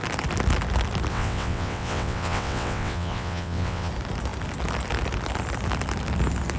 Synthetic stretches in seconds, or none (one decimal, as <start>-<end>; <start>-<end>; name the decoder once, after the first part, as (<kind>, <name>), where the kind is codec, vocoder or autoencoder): 1.1-3.9 (vocoder, WaveNeXt)